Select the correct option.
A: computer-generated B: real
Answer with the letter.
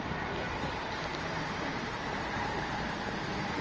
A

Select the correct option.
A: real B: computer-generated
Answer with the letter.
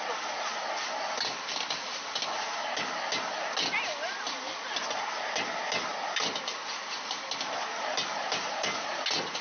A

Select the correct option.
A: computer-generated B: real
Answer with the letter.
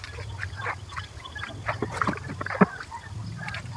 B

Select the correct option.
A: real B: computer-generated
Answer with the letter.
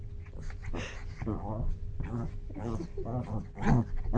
A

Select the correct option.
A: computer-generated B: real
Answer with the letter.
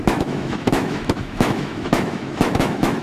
A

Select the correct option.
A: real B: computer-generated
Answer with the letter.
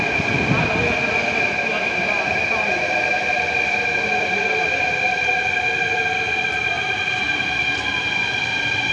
B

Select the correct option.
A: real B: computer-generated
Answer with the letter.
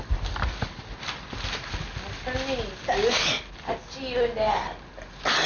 A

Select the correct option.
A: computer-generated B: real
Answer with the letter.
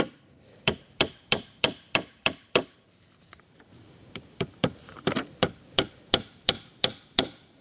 A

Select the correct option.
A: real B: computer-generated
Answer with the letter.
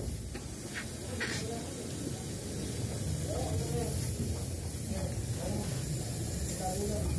A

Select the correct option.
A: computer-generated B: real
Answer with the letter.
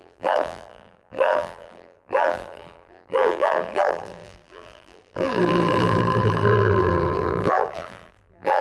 A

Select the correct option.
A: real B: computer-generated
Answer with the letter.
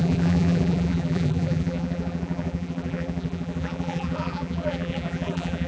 B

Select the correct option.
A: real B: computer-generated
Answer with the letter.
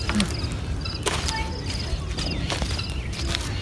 A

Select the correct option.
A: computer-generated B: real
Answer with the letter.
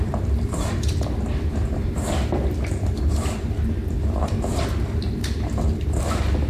A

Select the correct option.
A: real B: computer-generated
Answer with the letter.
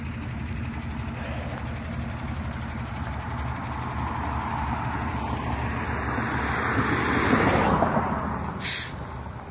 A